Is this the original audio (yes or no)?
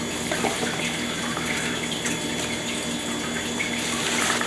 no